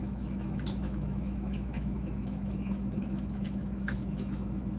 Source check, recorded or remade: remade